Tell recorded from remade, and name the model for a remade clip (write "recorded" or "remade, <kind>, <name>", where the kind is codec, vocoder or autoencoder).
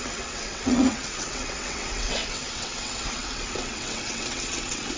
remade, vocoder, WaveNeXt